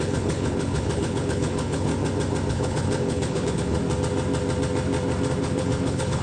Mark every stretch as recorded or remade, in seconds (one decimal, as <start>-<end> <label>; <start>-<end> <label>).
0.0-1.9 remade; 1.9-2.5 recorded; 2.5-3.8 remade; 3.8-5.4 recorded; 5.4-6.2 remade